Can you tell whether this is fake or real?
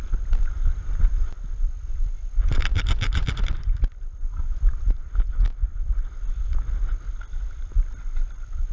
fake